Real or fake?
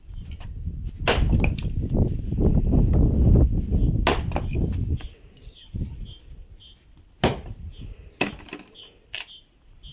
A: real